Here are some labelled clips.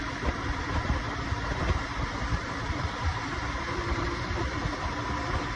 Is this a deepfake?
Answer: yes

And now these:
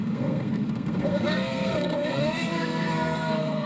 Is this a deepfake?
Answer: yes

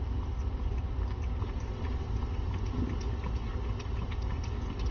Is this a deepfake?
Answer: no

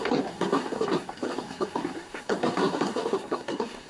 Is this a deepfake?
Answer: yes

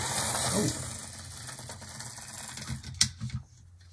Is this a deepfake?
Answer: no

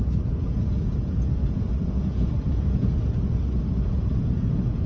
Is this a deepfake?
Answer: yes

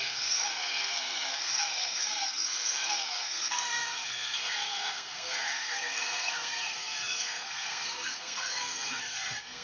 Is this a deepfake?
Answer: yes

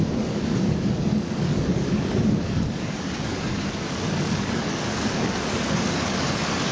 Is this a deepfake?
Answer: yes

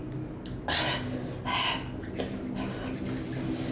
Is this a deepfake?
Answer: no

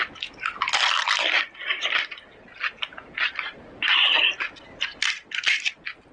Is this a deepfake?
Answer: no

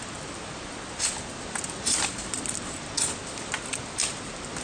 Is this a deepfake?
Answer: no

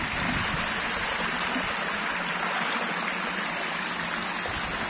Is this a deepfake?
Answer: no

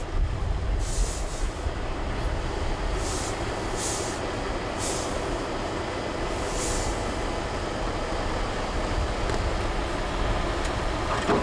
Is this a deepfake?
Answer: no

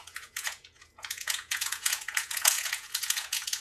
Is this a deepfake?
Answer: yes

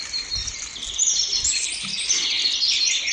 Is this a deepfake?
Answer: no